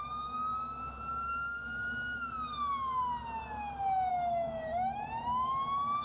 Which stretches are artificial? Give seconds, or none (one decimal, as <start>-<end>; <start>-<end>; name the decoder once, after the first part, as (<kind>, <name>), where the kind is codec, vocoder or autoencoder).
0.0-0.5 (autoencoder, DAC-VAE); 4.1-6.0

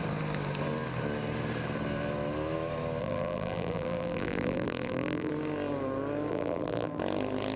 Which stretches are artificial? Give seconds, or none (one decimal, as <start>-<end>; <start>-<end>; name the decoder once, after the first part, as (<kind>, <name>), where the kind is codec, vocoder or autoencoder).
3.0-5.3 (vocoder, BigVGAN v2); 6.3-7.0

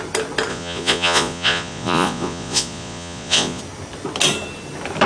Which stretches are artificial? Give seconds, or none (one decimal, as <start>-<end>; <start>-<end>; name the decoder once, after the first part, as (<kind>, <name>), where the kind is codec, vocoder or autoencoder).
0.5-3.6 (vocoder, Vocos)

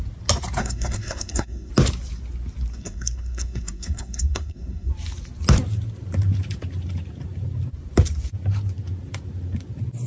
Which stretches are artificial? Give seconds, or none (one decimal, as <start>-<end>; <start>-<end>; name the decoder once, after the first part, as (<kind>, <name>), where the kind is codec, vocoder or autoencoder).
0.6-1.7 (codec, SNAC); 2.7-4.9